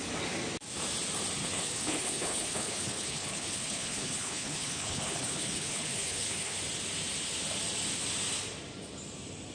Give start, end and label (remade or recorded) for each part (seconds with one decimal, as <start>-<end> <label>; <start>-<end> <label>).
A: 0.0-1.4 recorded; 1.4-6.6 remade; 6.6-9.5 recorded